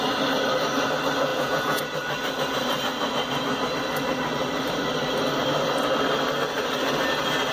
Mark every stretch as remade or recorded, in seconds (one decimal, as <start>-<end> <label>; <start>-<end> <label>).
0.0-1.3 recorded; 1.3-1.8 remade; 1.8-7.5 recorded